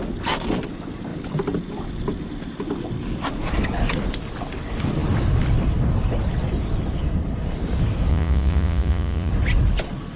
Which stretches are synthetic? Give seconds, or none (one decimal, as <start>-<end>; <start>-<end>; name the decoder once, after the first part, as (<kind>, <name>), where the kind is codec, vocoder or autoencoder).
8.1-9.3 (vocoder, Vocos)